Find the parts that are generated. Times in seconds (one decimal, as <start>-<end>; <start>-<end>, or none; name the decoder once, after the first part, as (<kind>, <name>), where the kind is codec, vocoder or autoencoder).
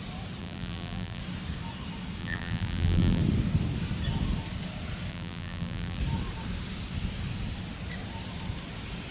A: 0.4-1.2 (vocoder, BigVGAN v2); 2.2-3.2; 5.1-6.0